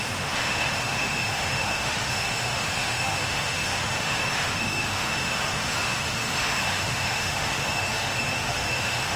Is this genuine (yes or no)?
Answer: no